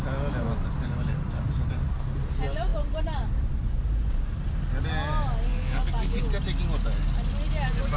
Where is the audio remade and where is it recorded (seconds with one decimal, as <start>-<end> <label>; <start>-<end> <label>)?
0.0-5.5 recorded; 5.5-6.2 remade; 6.2-8.0 recorded